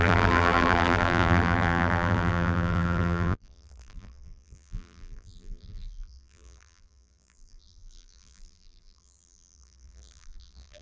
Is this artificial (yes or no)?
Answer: yes